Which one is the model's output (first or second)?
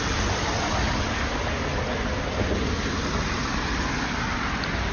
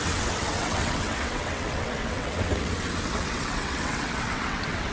second